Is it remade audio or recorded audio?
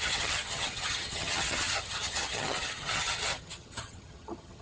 remade